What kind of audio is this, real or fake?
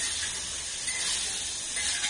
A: real